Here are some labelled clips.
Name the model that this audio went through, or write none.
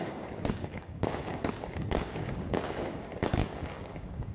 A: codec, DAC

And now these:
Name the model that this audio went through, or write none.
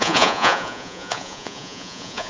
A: vocoder, Vocos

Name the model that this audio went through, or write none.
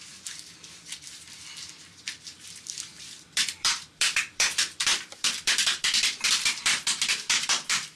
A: vocoder, BigVGAN v2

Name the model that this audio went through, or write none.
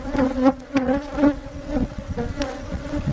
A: vocoder, WaveNeXt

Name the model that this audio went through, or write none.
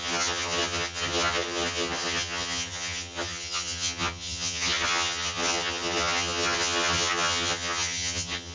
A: vocoder, HiFi-GAN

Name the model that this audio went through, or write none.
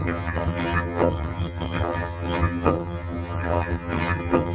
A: vocoder, HiFi-GAN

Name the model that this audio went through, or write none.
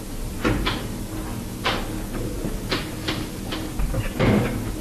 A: none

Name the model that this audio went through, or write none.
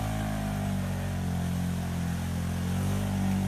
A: none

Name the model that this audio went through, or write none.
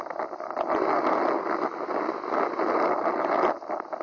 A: none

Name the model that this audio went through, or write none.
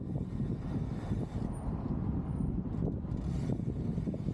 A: none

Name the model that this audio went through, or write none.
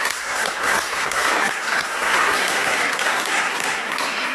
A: codec, SNAC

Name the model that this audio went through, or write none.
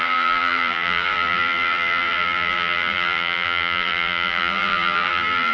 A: vocoder, BigVGAN v2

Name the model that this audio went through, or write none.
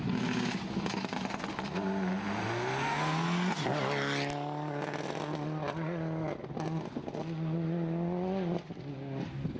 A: none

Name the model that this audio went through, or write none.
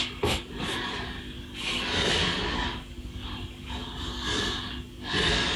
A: codec, DAC